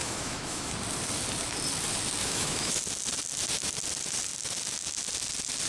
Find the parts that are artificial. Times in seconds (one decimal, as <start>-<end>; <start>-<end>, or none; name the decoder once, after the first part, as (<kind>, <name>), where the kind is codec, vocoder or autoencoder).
0.0-0.7 (autoencoder, DAC-VAE); 2.2-2.8